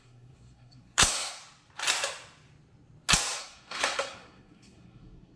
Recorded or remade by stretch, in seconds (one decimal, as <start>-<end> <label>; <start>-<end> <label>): 0.0-1.4 remade; 1.4-3.4 recorded; 3.4-5.4 remade